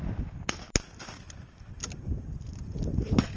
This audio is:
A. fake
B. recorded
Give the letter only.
A